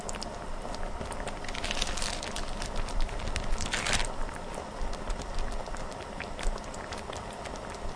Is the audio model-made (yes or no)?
no